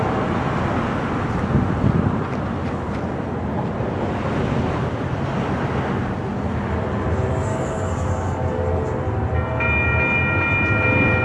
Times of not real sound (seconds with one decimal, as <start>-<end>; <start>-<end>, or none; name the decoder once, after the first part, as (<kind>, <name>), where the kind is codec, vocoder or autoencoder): 7.5-8.6 (codec, DAC)